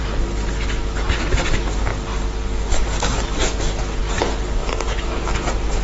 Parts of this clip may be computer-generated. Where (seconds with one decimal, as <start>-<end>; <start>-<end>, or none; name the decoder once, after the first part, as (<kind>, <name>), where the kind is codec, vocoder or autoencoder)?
4.6-5.2 (codec, DAC)